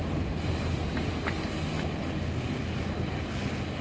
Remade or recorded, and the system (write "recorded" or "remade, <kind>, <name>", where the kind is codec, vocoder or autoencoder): recorded